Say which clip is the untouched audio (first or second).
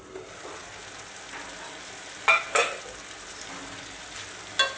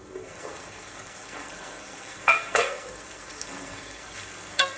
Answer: first